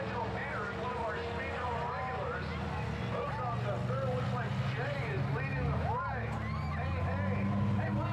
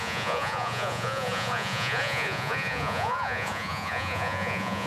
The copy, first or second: second